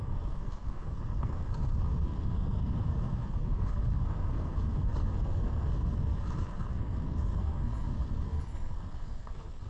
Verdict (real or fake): fake